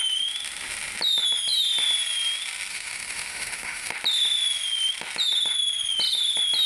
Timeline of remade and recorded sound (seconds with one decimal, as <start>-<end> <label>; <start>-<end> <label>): 0.0-2.7 recorded; 2.7-3.9 remade; 3.9-6.7 recorded

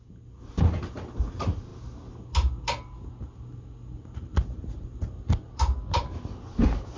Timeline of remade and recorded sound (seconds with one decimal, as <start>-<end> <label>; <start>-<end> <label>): 0.0-7.0 recorded

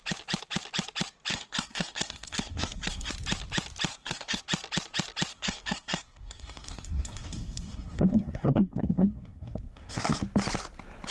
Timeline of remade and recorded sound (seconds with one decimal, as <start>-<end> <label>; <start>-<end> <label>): 0.0-1.3 recorded; 1.3-3.1 remade; 3.1-3.9 recorded; 3.9-4.4 remade; 4.4-5.3 recorded; 5.3-10.2 remade; 10.2-11.1 recorded

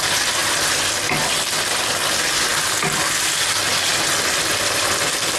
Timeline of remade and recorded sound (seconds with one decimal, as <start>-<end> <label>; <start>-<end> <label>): 0.0-5.4 recorded

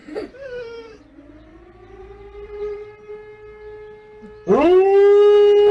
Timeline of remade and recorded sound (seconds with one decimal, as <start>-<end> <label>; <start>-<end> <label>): 0.0-3.1 remade; 3.1-5.7 recorded

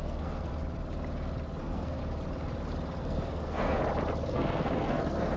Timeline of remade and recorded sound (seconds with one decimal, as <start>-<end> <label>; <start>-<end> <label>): 0.0-0.5 remade; 0.5-1.6 recorded; 1.6-2.0 remade; 2.0-3.0 recorded; 3.0-3.8 remade; 3.8-4.3 recorded; 4.3-5.4 remade

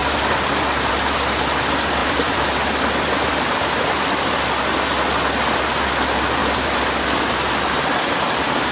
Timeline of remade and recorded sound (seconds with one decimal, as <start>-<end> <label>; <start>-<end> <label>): 0.0-0.9 remade; 0.9-2.0 recorded; 2.0-4.4 remade; 4.4-6.4 recorded; 6.4-7.2 remade; 7.2-8.7 recorded